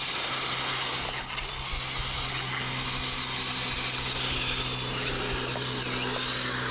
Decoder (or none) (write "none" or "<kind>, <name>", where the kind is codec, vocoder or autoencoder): none